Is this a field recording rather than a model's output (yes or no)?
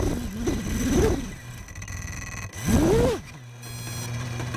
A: yes